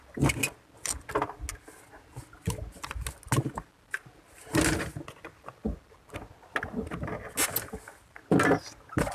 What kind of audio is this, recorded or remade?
recorded